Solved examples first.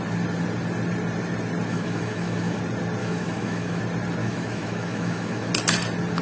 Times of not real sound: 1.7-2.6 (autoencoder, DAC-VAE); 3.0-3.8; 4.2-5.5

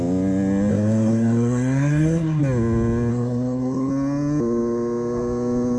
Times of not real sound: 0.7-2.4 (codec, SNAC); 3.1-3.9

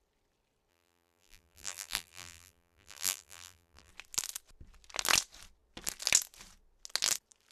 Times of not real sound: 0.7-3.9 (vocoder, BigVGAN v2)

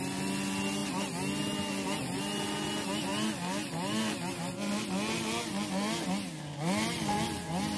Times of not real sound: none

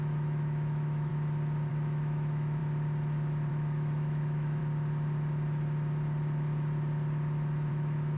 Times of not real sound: 0.0-1.1 (autoencoder, DAC-VAE); 1.7-2.6; 3.5-4.6; 7.7-8.2

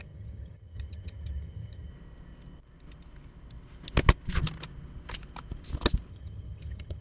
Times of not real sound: 0.0-1.9 (vocoder, HiFi-GAN); 6.1-7.0

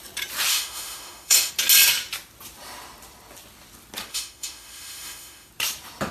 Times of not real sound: 0.5-1.5 (autoencoder, DAC-VAE); 4.1-5.5

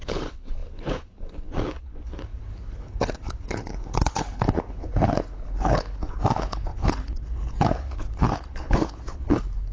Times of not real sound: 0.0-9.7 (codec, HILCodec)